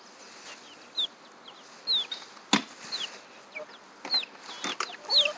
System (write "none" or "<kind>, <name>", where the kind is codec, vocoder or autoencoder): none